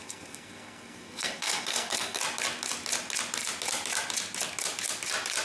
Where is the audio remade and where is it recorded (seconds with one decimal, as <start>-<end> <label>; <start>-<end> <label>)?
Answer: 0.0-2.2 remade; 2.2-5.4 recorded